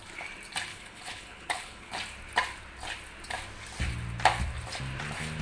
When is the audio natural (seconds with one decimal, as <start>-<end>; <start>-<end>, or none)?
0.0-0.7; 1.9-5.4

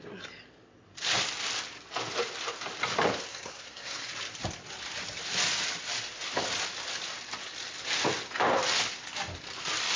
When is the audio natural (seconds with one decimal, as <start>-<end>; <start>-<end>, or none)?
0.0-3.3; 4.1-10.0

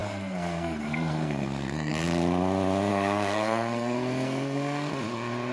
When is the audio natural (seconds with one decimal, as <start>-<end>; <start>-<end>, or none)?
1.9-2.9; 4.9-5.5

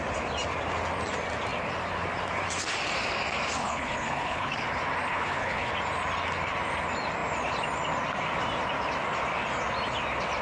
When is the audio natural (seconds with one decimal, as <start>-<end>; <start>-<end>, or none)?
0.0-3.6; 4.5-5.1; 5.7-10.4

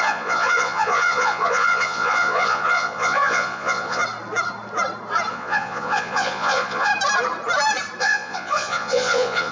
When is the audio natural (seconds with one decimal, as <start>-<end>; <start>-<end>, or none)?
4.0-5.3; 6.9-8.0

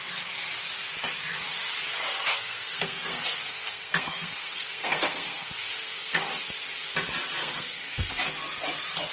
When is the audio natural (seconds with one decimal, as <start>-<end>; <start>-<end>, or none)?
0.0-2.3; 6.3-7.4; 8.1-9.1